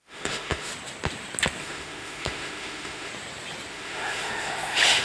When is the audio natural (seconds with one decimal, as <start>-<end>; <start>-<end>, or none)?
0.7-1.6; 3.1-3.7